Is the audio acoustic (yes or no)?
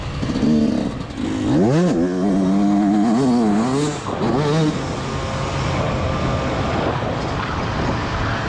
yes